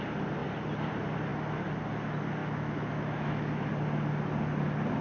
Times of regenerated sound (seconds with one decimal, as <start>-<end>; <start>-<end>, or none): 2.4-3.7